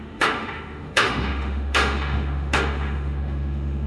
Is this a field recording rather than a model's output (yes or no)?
no